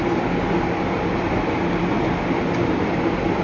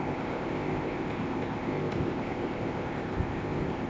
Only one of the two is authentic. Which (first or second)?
first